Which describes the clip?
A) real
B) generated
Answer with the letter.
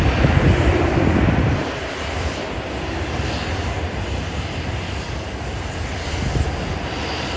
A